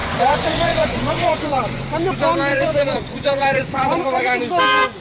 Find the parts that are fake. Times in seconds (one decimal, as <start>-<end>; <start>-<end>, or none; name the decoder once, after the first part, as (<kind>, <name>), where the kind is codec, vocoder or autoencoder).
0.0-1.8 (vocoder, Vocos); 2.5-4.6

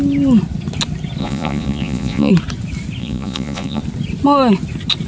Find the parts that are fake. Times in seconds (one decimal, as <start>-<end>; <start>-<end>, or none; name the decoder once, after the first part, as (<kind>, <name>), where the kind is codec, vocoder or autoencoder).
1.2-2.3 (vocoder, Vocos); 3.0-3.8

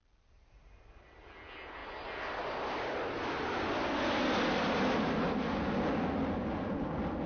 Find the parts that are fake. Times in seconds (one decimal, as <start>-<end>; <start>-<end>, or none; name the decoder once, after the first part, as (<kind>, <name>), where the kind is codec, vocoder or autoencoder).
none

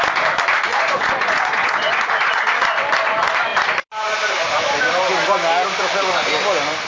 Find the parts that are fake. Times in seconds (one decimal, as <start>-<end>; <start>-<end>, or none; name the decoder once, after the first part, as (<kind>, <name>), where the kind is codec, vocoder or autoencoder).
0.7-2.4 (vocoder, Vocos)

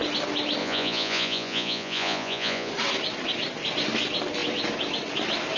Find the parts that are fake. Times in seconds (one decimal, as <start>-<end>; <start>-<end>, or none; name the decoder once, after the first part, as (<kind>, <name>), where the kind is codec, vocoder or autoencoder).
0.6-2.7 (vocoder, Vocos)